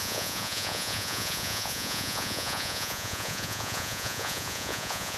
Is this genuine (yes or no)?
no